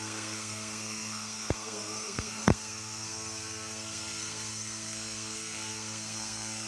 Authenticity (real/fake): fake